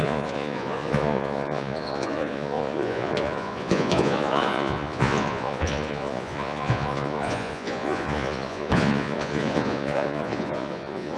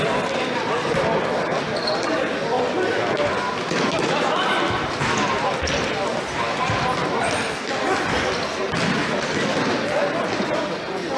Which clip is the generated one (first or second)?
first